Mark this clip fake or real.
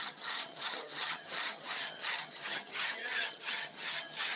fake